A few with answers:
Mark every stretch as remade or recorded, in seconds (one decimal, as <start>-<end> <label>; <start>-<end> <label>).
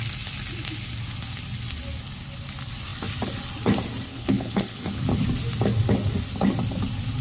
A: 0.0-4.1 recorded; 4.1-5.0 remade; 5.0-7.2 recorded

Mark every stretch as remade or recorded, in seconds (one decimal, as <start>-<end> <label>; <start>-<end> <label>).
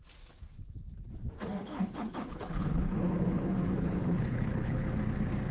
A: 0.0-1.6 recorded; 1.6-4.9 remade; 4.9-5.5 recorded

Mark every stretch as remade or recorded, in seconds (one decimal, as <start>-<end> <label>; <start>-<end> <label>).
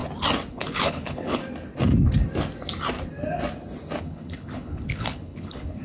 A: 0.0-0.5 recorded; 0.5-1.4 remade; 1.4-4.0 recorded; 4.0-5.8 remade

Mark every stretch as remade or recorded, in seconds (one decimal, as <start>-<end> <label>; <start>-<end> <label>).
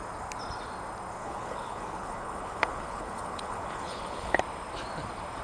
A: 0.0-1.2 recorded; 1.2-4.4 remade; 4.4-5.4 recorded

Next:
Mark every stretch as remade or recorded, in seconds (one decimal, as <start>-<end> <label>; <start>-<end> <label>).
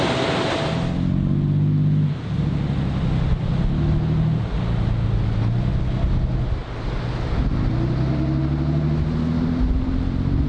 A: 0.0-10.5 recorded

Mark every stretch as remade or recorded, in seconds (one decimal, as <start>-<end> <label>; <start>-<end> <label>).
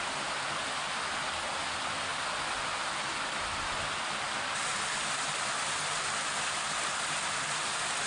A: 0.0-8.1 recorded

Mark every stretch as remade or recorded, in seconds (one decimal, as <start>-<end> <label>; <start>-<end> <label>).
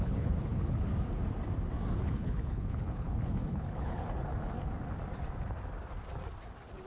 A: 0.0-0.9 remade; 0.9-1.9 recorded; 1.9-4.3 remade; 4.3-6.9 recorded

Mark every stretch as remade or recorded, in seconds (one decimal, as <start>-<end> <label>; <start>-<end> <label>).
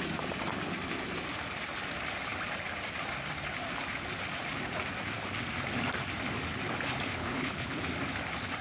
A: 0.0-7.1 recorded; 7.1-7.8 remade; 7.8-8.6 recorded